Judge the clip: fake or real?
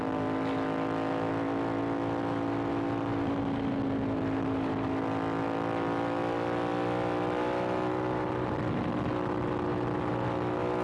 real